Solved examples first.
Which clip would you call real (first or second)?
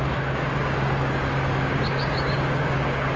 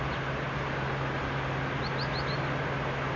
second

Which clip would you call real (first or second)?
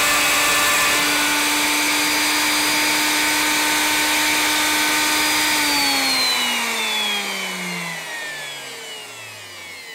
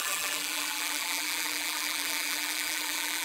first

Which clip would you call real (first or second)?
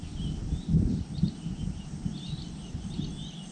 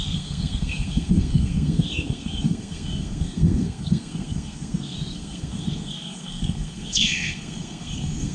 first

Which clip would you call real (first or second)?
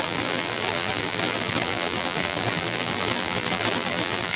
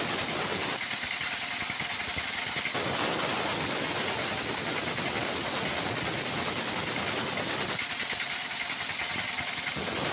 second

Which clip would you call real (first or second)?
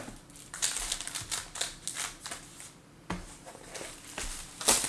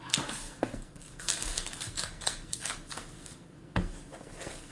first